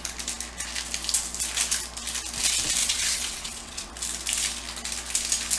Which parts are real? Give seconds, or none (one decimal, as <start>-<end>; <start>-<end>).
0.0-2.8; 3.9-5.6